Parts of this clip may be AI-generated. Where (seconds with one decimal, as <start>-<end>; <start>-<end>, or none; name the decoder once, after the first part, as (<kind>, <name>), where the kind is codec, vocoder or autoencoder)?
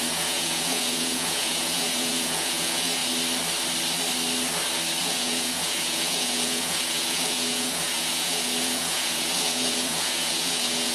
0.0-3.0 (vocoder, Vocos); 5.0-10.9